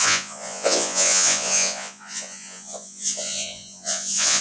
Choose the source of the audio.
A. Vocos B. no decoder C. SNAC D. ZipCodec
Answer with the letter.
A